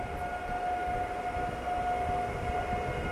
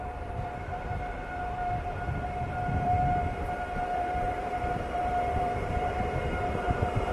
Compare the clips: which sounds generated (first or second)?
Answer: second